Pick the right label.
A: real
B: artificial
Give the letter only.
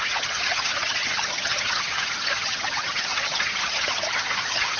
B